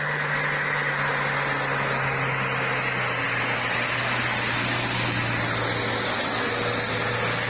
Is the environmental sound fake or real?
real